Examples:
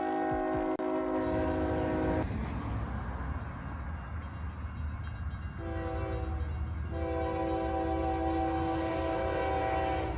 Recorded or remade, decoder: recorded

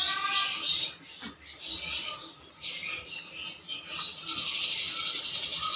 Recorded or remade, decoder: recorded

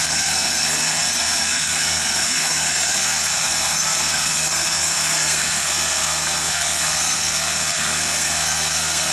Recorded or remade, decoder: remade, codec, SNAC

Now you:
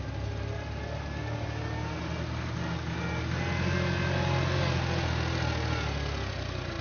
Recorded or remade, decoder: recorded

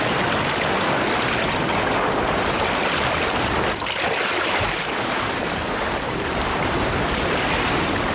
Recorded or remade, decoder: recorded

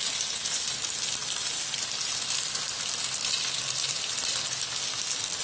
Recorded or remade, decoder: recorded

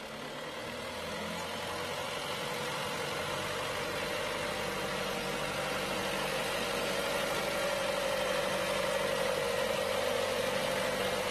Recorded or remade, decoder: recorded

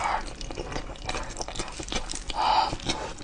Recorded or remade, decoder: recorded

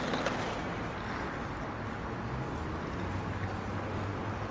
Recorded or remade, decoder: recorded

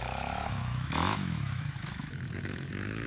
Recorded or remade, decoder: remade, autoencoder, DAC-VAE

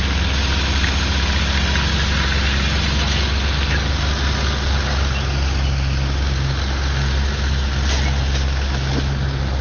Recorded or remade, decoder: recorded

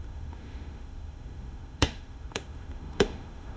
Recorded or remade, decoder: remade, autoencoder, DAC-VAE